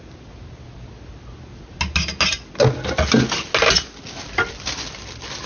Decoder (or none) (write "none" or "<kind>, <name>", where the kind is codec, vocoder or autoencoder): none